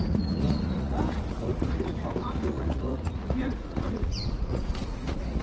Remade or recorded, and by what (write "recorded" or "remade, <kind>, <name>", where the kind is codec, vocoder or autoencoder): remade, vocoder, Vocos